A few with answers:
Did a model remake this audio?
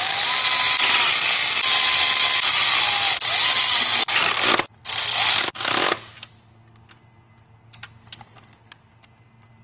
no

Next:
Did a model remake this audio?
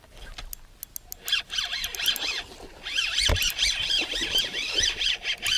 no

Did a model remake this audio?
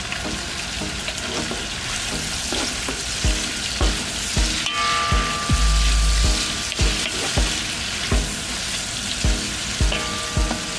no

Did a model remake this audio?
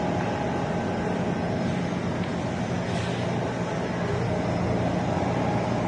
no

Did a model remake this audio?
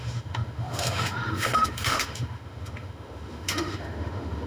yes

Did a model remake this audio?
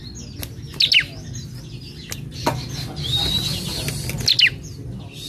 no